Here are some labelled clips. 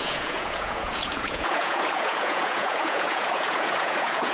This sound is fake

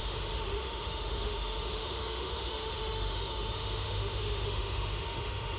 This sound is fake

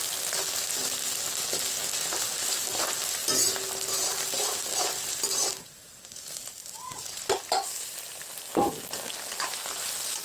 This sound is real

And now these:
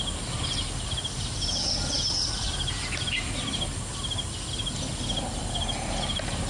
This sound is real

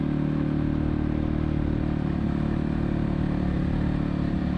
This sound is real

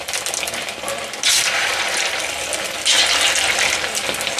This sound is real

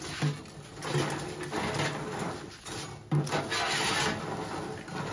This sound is real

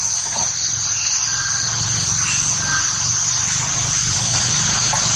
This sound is real